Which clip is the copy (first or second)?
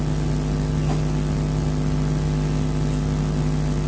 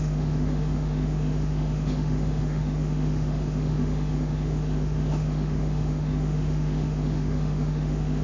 second